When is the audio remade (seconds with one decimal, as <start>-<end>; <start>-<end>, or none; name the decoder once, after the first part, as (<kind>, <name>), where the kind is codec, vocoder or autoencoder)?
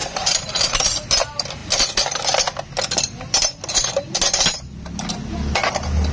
0.0-0.5 (vocoder, BigVGAN v2)